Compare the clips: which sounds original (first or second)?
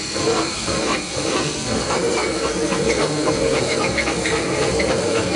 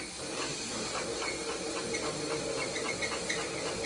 second